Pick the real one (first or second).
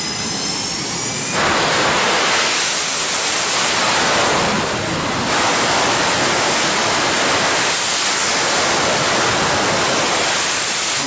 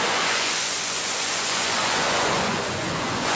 first